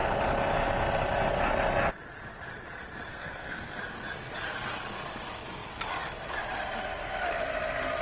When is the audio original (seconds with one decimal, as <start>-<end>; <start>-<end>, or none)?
0.0-3.1; 3.8-8.0